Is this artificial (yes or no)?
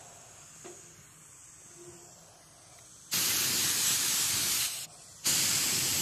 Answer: no